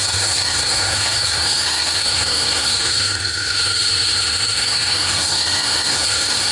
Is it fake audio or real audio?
fake